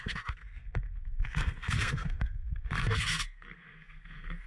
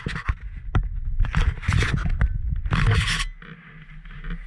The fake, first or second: first